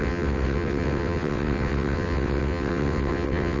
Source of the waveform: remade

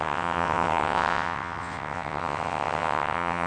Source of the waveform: remade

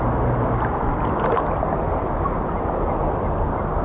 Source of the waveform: recorded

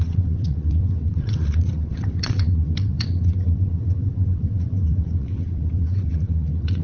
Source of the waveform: remade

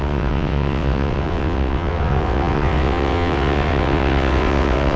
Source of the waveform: remade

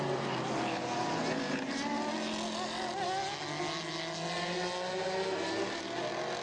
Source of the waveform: recorded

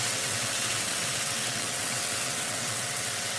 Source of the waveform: remade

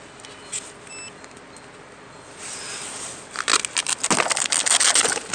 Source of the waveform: recorded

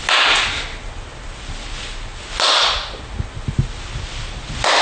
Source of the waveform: recorded